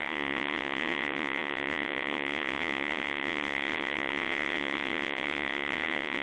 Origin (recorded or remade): remade